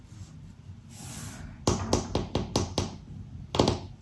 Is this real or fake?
real